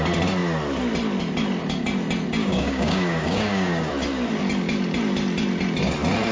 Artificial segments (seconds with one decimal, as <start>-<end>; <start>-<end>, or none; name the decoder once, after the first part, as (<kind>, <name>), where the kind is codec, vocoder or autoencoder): 2.4-3.9 (codec, DAC)